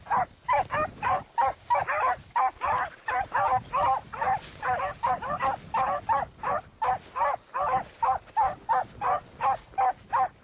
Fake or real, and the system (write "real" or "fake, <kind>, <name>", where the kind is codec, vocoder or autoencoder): real